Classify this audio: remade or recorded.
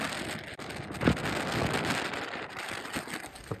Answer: recorded